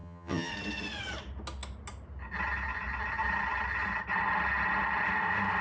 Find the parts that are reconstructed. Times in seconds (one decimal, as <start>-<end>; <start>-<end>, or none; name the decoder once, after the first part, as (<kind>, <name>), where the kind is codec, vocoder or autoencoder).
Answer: 0.0-0.5 (vocoder, HiFi-GAN)